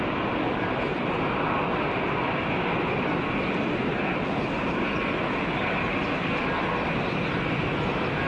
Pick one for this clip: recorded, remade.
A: recorded